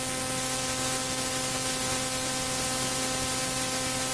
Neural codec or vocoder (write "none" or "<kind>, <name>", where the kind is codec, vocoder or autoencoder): none